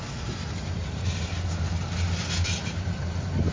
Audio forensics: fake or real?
real